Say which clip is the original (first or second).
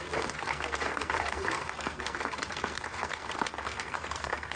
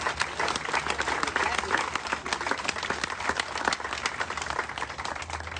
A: second